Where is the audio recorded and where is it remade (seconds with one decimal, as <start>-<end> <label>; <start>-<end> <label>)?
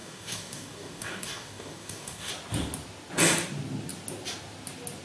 0.0-2.3 remade; 2.3-5.0 recorded